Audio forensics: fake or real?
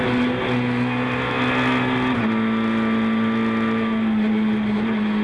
real